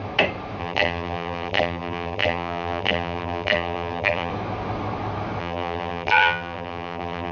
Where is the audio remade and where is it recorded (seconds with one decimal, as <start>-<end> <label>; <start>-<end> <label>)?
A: 0.0-0.6 recorded; 0.6-4.3 remade; 4.3-5.4 recorded; 5.4-7.3 remade